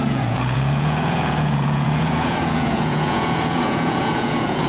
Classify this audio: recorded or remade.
remade